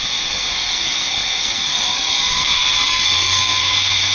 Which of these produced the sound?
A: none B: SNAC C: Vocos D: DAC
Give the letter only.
B